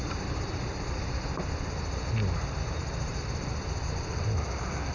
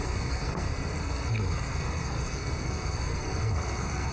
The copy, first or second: second